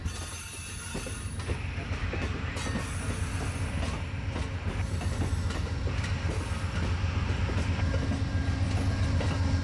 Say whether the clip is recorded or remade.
recorded